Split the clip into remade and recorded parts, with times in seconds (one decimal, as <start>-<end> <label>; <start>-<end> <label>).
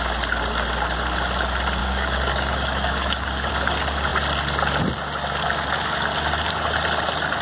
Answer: 0.0-1.8 recorded; 1.8-3.5 remade; 3.5-7.4 recorded